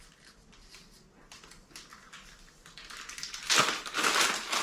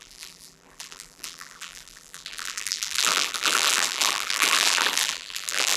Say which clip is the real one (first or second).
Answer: first